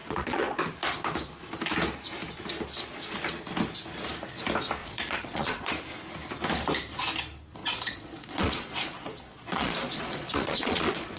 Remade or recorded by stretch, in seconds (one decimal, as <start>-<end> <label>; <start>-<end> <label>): 0.0-0.6 remade; 0.6-4.8 recorded; 4.8-5.7 remade; 5.7-7.6 recorded; 7.6-11.2 remade